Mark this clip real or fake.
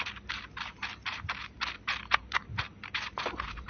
fake